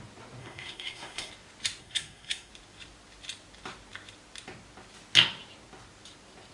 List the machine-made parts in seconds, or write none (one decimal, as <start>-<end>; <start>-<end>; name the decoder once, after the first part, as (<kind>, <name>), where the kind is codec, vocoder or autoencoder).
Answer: 0.4-1.3 (codec, SNAC); 1.8-2.5

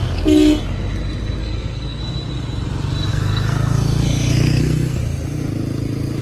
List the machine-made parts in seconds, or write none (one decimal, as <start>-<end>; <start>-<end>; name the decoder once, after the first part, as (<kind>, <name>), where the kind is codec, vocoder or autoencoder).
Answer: 0.0-0.6 (codec, SNAC); 1.4-2.0; 3.1-5.0

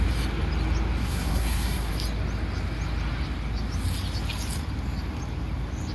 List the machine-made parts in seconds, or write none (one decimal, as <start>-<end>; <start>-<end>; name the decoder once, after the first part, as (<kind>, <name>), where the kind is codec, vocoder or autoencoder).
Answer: 1.0-1.9 (codec, SNAC)

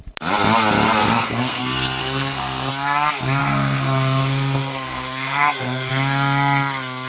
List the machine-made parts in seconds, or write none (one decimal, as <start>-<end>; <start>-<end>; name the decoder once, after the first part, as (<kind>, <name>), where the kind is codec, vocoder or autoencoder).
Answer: 1.0-1.6 (codec, SNAC); 2.0-2.7; 3.4-5.9

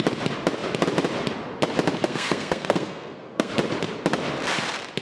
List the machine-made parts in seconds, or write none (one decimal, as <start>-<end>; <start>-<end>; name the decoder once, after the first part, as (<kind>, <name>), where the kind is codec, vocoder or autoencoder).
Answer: 2.0-3.5 (codec, SNAC)

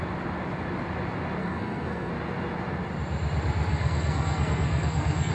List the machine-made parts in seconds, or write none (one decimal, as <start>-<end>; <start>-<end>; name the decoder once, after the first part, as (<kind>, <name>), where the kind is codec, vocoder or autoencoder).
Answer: 1.4-2.1 (codec, SNAC); 3.7-5.3